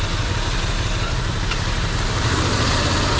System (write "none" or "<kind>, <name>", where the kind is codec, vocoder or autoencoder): vocoder, BigVGAN v2